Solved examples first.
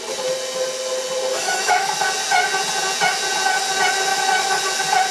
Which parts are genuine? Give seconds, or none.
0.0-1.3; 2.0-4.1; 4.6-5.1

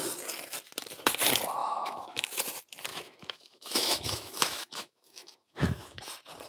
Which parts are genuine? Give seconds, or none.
0.0-1.6; 2.4-2.9; 6.0-6.5

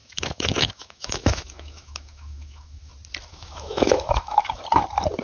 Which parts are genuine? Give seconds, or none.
2.9-3.3; 4.6-5.2